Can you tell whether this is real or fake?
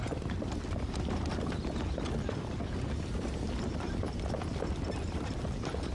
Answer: real